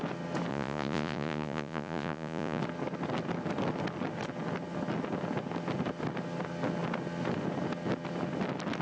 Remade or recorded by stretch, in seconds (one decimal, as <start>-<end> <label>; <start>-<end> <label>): 0.0-0.5 recorded; 0.5-2.6 remade; 2.6-8.8 recorded